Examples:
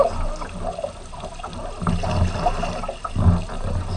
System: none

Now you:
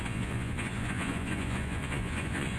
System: vocoder, Vocos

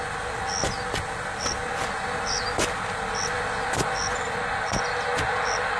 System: none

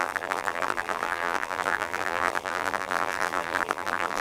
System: vocoder, BigVGAN v2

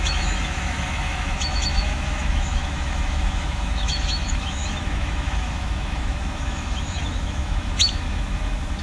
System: autoencoder, DAC-VAE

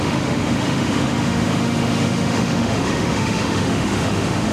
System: autoencoder, DAC-VAE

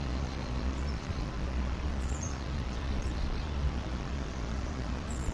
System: vocoder, Vocos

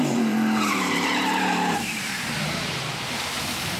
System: vocoder, BigVGAN v2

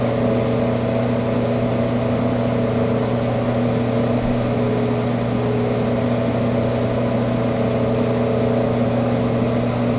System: none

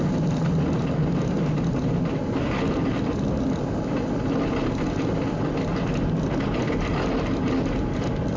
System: none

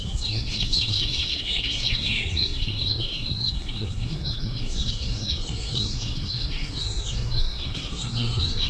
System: codec, SNAC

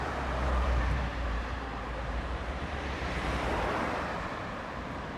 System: vocoder, BigVGAN v2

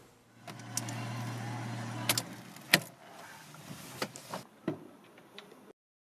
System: none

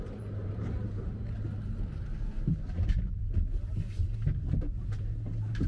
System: vocoder, BigVGAN v2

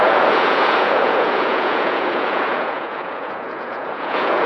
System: vocoder, Vocos